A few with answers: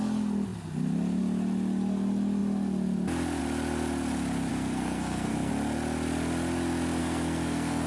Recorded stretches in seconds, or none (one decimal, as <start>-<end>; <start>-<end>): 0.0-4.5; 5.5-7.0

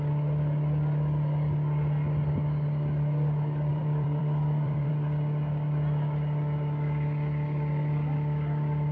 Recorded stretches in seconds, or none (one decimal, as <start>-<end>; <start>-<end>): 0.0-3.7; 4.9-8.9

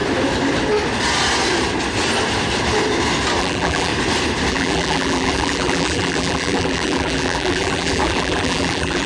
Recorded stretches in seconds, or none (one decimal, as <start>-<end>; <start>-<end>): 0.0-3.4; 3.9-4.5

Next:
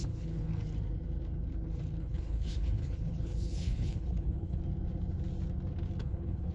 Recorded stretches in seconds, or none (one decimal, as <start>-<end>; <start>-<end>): 0.5-2.0; 4.6-6.0

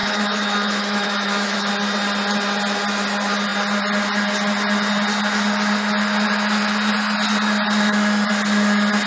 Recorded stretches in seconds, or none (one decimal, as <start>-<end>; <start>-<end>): 1.7-9.1

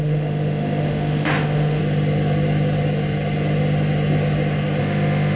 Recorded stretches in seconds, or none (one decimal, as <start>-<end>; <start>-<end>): 1.8-4.8